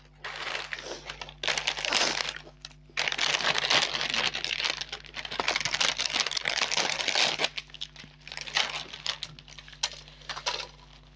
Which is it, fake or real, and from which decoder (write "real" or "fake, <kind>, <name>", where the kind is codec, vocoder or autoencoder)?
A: real